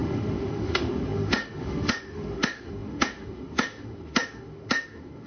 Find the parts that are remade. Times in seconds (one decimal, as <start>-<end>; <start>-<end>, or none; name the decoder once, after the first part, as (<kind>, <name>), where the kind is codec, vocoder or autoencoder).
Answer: 0.0-5.3 (autoencoder, DAC-VAE)